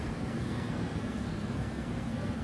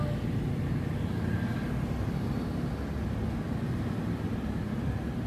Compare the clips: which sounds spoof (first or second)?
first